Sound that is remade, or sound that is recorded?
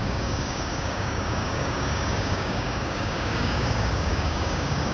remade